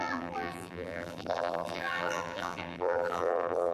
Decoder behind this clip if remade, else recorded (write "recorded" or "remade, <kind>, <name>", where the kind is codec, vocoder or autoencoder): remade, vocoder, BigVGAN v2